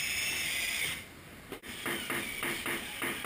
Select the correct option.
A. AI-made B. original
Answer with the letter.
B